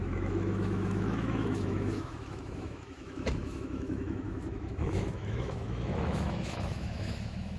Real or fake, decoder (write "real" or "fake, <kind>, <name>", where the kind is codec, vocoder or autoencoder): fake, autoencoder, DAC-VAE